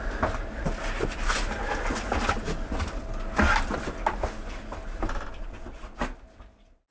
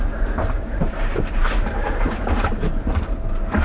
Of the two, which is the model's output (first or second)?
second